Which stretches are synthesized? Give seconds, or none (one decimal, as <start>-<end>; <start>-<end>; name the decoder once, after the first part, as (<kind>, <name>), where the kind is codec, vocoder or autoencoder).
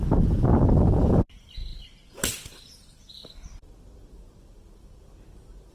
none